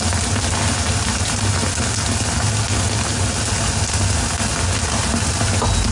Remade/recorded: recorded